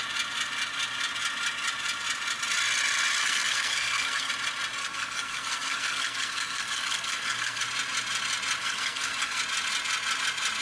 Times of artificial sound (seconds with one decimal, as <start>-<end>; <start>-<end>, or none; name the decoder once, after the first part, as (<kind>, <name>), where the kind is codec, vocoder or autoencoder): 3.2-4.3 (codec, SNAC); 4.8-7.6; 8.6-9.4